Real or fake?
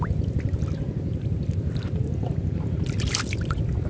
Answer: real